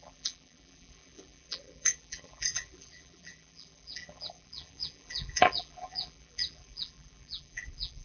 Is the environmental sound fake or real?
fake